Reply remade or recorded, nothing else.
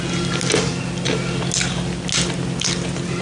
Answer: recorded